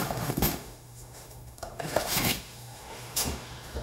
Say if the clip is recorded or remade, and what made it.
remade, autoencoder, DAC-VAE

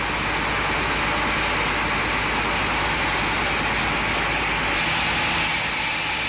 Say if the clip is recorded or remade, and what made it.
recorded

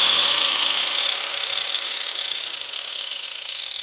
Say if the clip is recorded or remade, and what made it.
remade, autoencoder, DAC-VAE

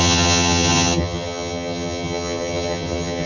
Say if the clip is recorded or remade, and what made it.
remade, vocoder, HiFi-GAN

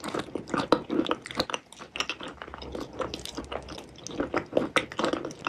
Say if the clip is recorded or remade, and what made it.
recorded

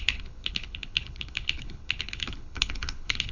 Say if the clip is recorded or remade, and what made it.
remade, codec, HILCodec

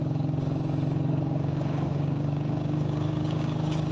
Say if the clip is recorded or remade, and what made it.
remade, codec, DAC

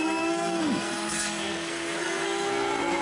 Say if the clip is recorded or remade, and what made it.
remade, codec, SNAC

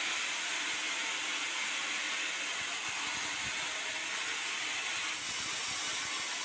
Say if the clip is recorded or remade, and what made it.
recorded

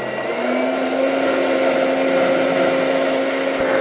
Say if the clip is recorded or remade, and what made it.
recorded